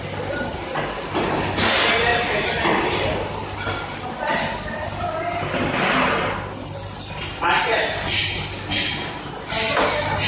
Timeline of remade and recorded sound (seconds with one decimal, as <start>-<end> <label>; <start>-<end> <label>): 0.0-10.3 recorded